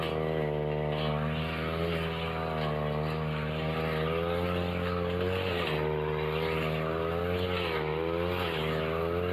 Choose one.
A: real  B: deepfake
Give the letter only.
A